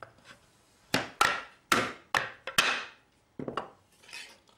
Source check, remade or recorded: recorded